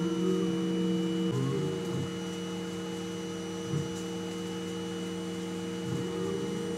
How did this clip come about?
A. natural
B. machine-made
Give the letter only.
A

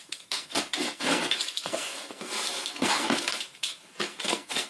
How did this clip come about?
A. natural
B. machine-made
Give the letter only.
B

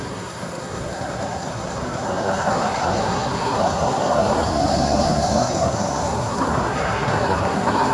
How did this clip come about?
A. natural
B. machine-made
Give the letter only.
B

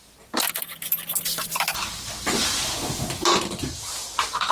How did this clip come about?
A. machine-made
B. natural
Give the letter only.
B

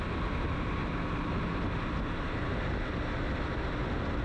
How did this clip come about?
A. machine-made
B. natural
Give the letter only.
B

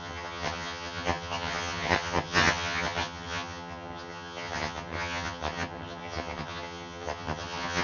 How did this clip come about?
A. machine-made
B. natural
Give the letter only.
A